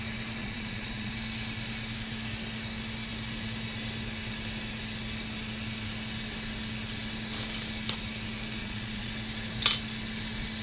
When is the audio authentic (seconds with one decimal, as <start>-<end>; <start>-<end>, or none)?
0.0-0.4; 1.1-8.6; 9.1-10.6